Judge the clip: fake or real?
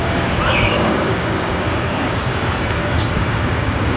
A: fake